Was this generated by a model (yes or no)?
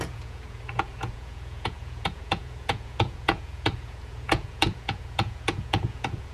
yes